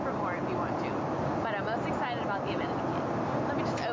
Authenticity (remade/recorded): recorded